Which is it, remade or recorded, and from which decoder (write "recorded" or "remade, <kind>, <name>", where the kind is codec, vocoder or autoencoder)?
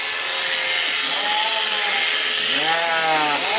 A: recorded